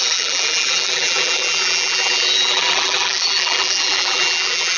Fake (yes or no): yes